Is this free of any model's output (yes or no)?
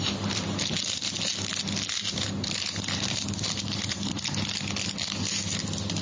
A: yes